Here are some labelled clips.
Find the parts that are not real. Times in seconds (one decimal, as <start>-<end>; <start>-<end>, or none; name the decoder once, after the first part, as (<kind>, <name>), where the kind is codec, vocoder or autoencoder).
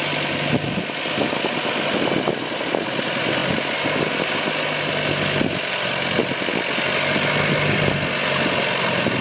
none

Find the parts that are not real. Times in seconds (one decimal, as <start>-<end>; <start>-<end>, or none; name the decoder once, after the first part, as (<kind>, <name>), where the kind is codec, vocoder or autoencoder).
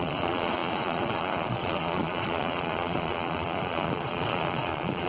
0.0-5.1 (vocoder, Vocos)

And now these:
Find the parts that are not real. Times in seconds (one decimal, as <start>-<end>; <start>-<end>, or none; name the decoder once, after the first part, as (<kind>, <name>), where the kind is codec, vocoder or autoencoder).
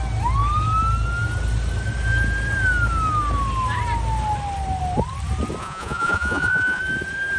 5.6-6.8 (vocoder, Vocos)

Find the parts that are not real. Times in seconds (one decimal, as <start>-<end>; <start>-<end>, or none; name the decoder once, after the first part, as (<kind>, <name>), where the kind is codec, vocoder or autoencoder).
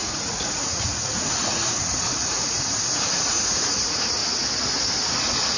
0.0-4.2 (vocoder, Vocos); 5.1-5.6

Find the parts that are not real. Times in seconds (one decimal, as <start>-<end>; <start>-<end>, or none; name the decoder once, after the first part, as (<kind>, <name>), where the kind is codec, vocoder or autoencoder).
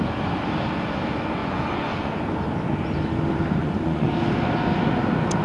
1.4-2.1 (vocoder, Vocos); 3.6-4.1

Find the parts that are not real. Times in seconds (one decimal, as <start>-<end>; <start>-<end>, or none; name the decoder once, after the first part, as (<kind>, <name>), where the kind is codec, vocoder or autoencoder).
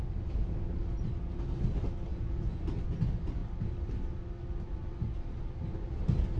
2.1-2.6 (vocoder, Vocos)